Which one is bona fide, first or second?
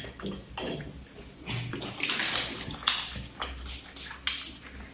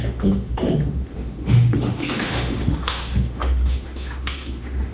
first